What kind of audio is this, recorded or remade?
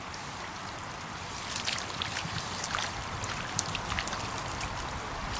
remade